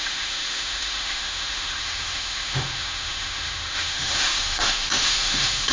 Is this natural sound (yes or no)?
no